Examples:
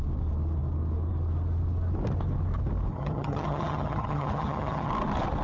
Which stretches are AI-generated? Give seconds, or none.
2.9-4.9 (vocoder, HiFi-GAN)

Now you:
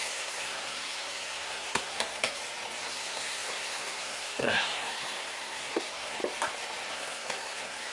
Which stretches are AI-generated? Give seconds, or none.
0.0-2.4 (codec, SNAC); 2.9-6.2; 6.9-7.9

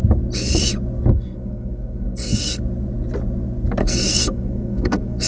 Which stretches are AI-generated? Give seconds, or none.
1.1-2.6 (codec, SNAC); 3.8-5.3

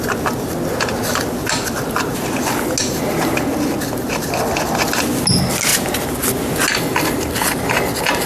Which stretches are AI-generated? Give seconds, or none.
none

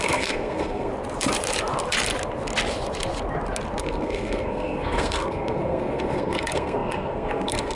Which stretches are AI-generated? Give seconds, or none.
0.0-0.9 (codec, SNAC); 3.8-7.8

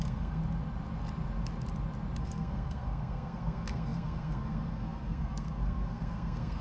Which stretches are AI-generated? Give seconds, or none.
0.0-0.4 (codec, SNAC); 2.2-6.6

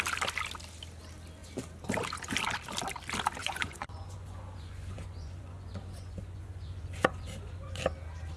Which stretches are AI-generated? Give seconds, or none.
3.4-7.8 (vocoder, Vocos)